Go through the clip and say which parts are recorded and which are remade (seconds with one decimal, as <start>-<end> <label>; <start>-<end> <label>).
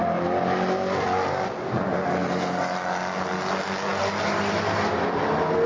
0.0-5.7 recorded